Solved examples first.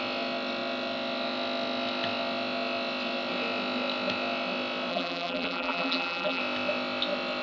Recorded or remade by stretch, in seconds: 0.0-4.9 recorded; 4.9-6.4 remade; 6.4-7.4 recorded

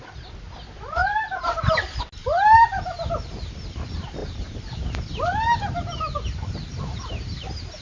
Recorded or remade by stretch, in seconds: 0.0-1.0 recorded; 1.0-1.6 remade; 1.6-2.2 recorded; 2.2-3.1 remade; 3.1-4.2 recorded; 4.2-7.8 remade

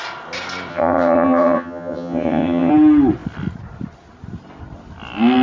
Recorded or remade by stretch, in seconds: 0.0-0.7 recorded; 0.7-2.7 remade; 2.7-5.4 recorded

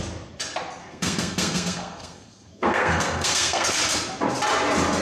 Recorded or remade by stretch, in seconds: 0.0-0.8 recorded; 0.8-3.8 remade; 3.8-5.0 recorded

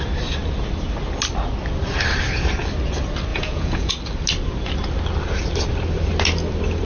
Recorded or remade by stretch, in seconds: 0.0-3.3 recorded; 3.3-3.9 remade; 3.9-6.8 recorded

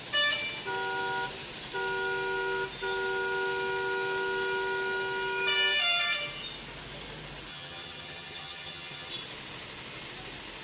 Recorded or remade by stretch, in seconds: 0.0-7.5 recorded; 7.5-9.1 remade; 9.1-10.6 recorded